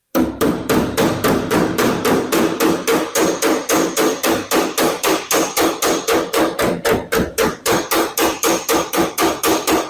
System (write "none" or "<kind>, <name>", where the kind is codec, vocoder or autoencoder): vocoder, BigVGAN v2